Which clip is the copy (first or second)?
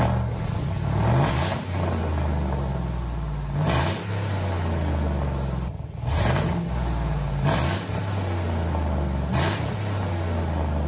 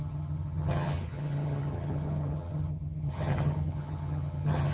second